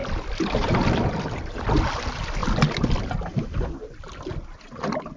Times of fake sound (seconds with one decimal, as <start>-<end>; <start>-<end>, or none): none